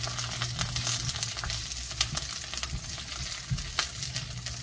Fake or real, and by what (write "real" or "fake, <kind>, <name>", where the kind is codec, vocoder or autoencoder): real